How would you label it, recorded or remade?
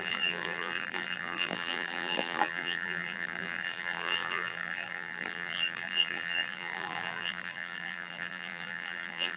remade